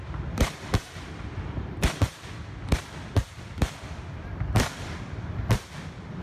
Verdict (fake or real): real